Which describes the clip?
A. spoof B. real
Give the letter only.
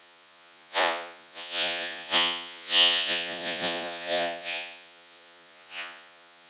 A